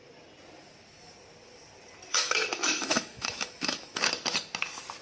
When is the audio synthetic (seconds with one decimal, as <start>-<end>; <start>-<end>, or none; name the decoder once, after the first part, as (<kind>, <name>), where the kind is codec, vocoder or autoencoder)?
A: 2.1-4.0 (autoencoder, DAC-VAE)